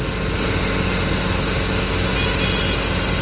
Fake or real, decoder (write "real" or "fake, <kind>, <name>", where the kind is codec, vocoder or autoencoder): real